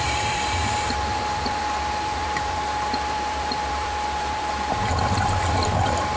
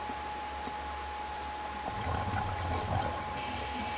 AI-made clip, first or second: first